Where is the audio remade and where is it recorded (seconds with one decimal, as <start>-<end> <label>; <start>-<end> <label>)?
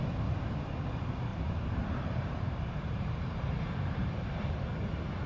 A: 0.0-1.3 recorded; 1.3-4.5 remade; 4.5-5.3 recorded